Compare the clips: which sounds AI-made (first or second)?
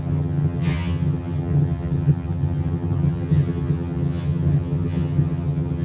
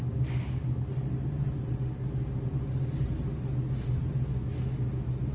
first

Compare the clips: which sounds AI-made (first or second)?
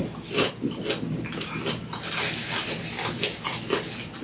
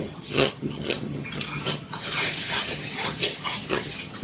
second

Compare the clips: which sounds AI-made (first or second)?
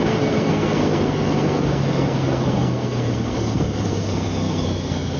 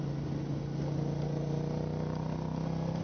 first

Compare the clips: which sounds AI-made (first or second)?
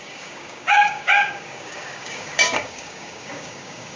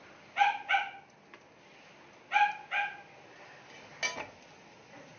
first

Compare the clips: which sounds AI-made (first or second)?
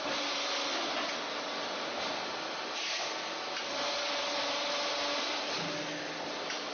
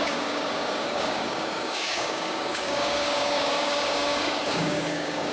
second